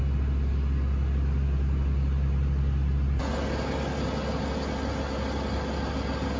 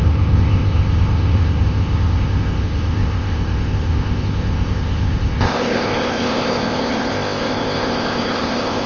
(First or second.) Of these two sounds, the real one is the first